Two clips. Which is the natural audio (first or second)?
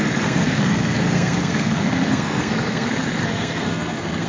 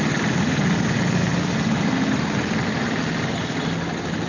second